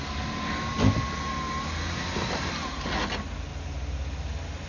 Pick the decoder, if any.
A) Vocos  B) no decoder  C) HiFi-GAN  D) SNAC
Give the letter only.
B